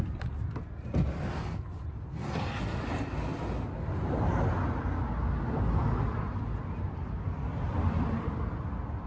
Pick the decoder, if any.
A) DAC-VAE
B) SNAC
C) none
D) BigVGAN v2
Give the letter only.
C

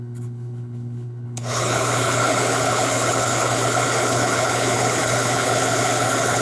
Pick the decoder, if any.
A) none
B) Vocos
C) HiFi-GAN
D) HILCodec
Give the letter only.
D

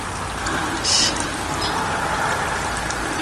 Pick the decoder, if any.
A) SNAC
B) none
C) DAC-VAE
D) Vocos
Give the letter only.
B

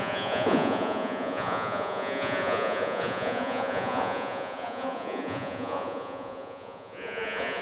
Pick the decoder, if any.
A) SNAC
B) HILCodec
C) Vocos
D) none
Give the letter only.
C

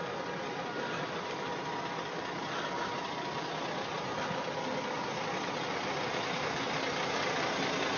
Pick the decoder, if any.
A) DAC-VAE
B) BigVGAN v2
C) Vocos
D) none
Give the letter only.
D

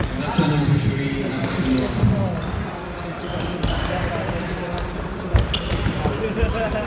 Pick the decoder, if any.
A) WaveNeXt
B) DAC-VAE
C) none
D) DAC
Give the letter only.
C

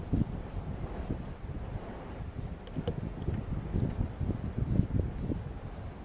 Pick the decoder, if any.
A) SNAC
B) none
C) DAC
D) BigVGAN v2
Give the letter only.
B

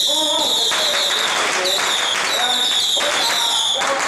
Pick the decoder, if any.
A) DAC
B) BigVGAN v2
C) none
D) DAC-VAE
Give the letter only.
C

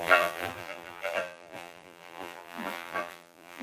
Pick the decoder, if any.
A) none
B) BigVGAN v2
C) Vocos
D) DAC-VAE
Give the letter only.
B